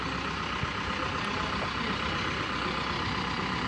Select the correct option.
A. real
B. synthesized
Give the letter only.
A